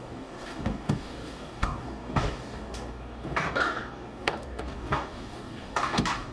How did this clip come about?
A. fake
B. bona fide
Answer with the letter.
A